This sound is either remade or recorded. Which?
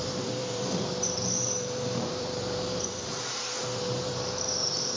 remade